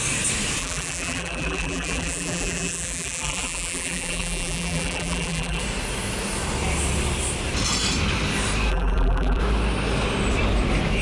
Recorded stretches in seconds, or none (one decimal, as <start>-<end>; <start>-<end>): 0.0-0.6; 5.6-8.7; 9.4-11.0